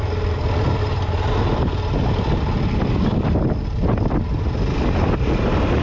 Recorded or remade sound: recorded